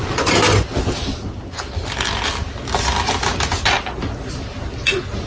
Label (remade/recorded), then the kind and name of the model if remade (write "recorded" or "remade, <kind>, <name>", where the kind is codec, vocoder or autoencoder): recorded